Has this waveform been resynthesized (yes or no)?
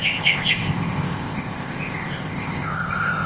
yes